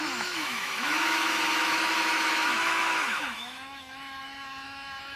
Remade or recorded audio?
remade